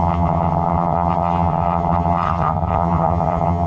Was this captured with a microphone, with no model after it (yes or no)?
no